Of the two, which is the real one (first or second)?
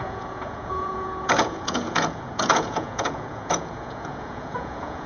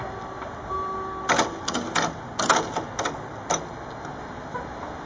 second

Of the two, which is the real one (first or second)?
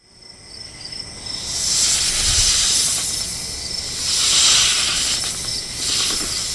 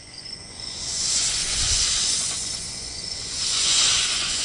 first